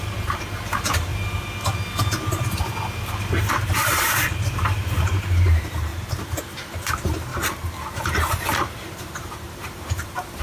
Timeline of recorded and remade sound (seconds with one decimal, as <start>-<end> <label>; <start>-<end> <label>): 0.0-1.1 remade; 1.1-3.5 recorded; 3.5-5.9 remade; 5.9-6.4 recorded; 6.4-7.3 remade; 7.3-8.6 recorded; 8.6-10.4 remade